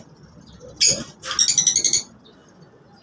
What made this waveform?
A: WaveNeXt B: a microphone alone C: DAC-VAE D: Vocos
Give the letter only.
B